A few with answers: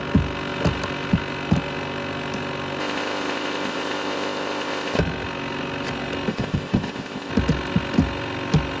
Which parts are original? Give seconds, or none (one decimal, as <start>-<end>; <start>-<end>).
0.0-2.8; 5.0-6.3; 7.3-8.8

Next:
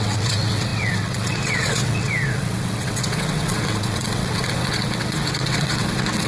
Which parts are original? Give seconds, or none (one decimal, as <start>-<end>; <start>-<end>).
none

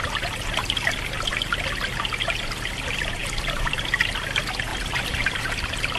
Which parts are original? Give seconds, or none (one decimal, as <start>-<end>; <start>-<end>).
0.0-3.2; 3.9-4.7; 5.6-6.0

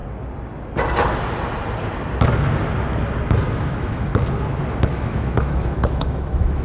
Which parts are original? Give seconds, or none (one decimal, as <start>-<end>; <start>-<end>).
0.0-3.6; 4.1-4.9

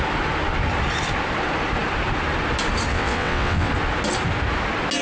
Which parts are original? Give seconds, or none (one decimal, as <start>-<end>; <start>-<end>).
0.0-2.9; 3.7-5.0

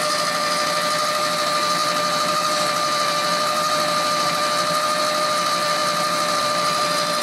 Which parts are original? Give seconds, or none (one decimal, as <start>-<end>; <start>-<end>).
0.0-7.2